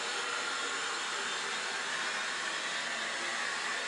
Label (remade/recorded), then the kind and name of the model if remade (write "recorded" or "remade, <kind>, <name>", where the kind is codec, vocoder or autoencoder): recorded